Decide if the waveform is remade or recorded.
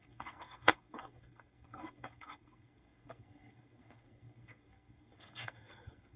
remade